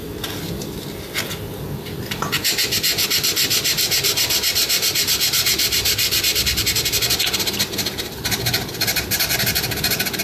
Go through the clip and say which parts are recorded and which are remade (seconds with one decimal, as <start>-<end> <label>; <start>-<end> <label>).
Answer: 0.0-10.2 recorded